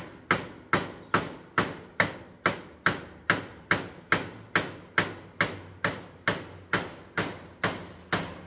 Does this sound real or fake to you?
real